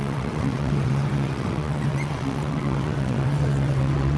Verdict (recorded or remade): remade